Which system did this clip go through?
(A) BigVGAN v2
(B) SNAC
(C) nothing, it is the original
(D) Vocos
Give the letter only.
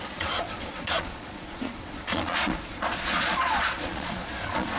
D